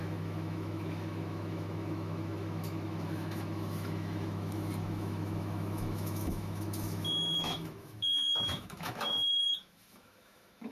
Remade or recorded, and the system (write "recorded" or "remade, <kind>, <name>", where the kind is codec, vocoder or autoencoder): remade, autoencoder, DAC-VAE